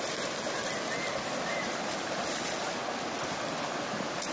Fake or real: real